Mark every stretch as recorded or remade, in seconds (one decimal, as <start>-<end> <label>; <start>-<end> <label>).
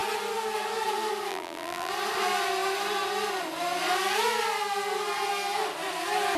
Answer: 0.0-1.3 recorded; 1.3-1.9 remade; 1.9-6.4 recorded